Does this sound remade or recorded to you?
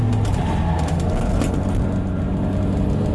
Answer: recorded